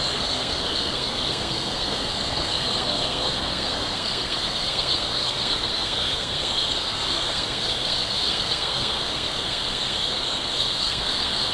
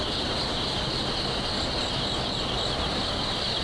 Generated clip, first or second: first